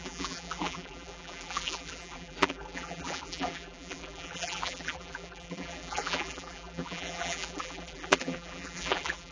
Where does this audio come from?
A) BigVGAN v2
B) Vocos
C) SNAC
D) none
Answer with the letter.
A